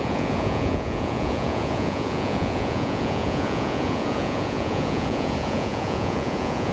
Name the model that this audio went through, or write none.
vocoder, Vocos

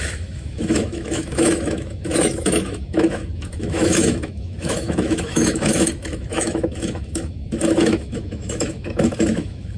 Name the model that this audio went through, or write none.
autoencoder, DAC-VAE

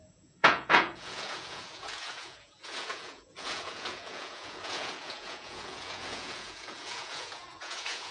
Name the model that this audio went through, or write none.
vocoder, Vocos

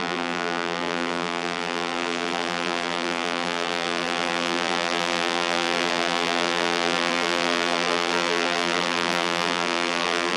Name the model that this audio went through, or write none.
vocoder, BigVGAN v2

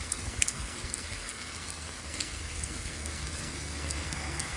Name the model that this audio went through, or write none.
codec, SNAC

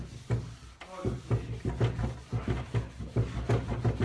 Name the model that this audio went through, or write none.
none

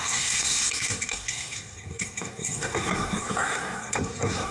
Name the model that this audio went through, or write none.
codec, SNAC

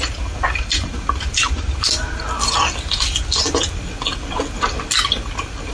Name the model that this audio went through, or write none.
none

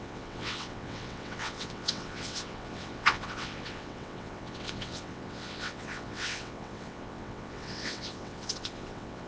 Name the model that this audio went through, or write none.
vocoder, WaveNeXt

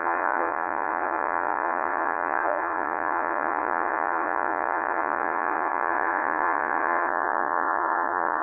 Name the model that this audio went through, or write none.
vocoder, Vocos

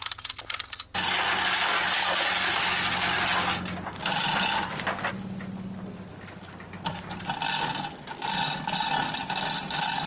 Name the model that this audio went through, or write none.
none